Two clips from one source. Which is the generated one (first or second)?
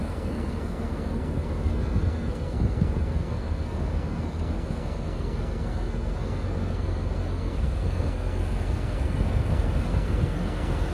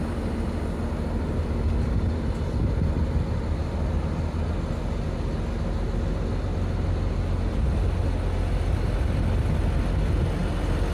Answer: first